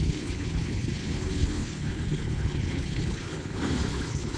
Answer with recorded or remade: remade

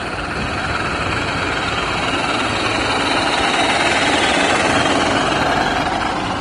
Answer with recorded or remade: recorded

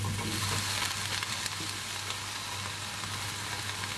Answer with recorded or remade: recorded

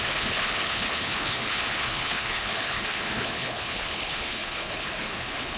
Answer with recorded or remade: remade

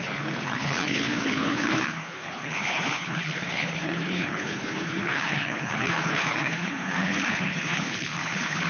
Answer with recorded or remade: remade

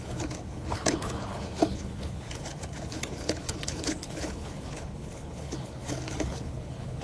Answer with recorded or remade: remade